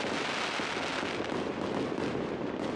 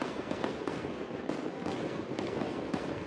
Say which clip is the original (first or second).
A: first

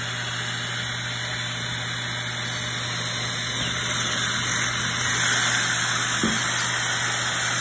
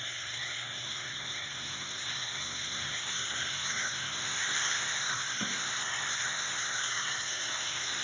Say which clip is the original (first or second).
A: first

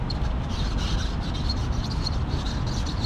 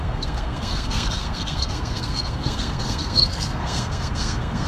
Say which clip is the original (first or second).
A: first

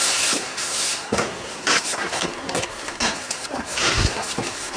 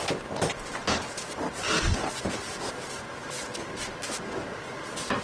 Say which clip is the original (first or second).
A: second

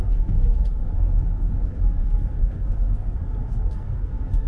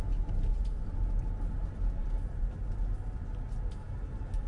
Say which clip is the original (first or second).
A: second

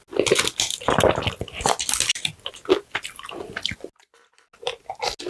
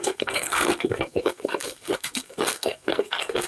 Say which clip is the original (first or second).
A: first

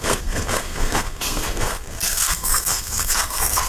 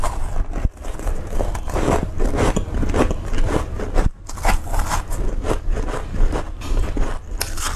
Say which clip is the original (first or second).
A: second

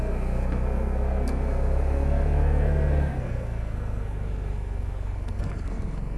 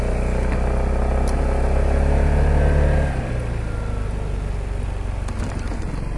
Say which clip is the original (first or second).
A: second